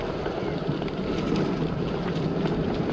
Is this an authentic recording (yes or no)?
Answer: yes